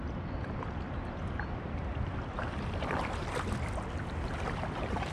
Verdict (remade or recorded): recorded